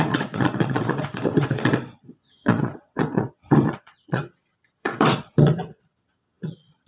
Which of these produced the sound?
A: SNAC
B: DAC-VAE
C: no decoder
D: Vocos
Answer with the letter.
D